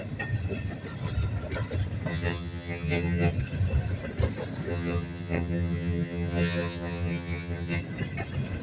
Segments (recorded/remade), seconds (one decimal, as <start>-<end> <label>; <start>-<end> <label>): 0.0-2.1 recorded; 2.1-3.3 remade; 3.3-4.7 recorded; 4.7-7.8 remade; 7.8-8.6 recorded